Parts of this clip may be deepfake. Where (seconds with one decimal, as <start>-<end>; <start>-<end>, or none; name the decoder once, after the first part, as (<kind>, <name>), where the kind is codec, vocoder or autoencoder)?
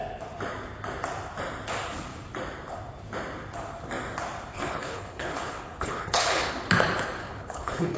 4.5-6.5 (codec, HILCodec); 7.2-8.0